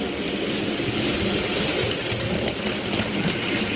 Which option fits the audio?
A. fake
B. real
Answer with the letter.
B